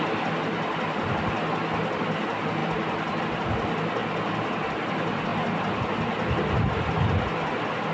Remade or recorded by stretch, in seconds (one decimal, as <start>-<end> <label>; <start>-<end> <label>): 0.0-7.9 recorded